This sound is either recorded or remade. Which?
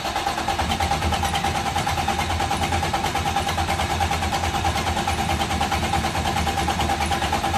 recorded